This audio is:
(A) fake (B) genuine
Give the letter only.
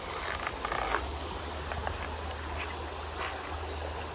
B